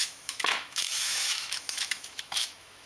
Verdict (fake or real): fake